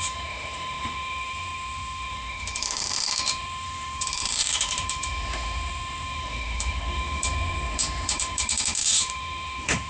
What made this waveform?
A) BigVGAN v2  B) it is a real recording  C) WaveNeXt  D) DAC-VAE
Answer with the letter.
D